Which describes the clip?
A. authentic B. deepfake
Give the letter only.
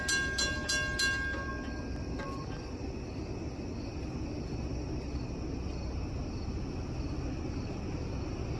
A